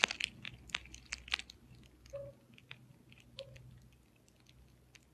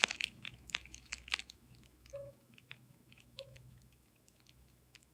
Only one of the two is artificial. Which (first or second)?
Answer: second